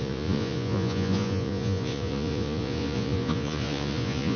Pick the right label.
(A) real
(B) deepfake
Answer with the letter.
B